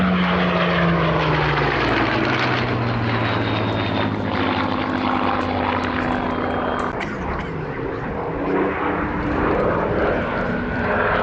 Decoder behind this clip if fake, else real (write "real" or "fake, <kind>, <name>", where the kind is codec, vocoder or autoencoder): real